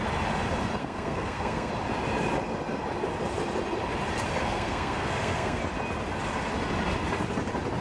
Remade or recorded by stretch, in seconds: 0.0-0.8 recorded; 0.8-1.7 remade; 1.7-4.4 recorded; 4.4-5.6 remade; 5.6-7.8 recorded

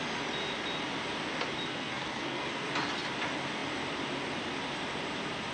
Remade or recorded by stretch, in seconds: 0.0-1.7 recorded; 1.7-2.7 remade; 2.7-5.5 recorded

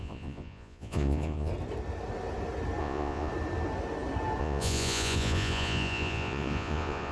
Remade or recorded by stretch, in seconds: 0.0-1.5 remade; 1.5-2.8 recorded; 2.8-3.3 remade; 3.3-4.4 recorded; 4.4-7.1 remade

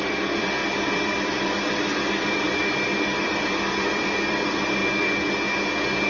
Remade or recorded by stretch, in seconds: 0.0-4.8 remade; 4.8-6.1 recorded

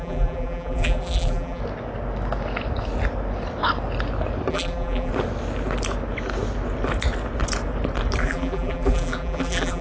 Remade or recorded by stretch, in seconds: 0.0-1.6 remade; 1.6-4.5 recorded; 4.5-5.1 remade; 5.1-8.2 recorded; 8.2-9.8 remade

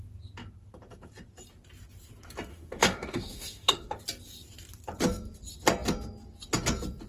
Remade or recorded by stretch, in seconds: 0.0-2.5 recorded; 2.5-4.0 remade; 4.0-7.1 recorded

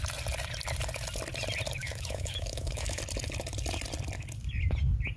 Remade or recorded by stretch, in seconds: 0.0-1.8 recorded; 1.8-3.0 remade; 3.0-5.2 recorded

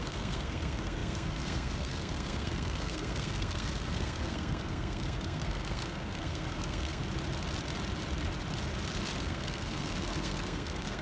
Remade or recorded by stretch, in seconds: 0.0-7.0 remade; 7.0-9.2 recorded; 9.2-11.0 remade